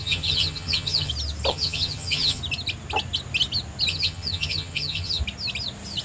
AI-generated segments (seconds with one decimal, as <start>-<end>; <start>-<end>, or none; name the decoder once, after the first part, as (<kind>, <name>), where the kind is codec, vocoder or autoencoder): 0.0-1.1 (vocoder, HiFi-GAN); 1.5-2.4; 3.9-5.2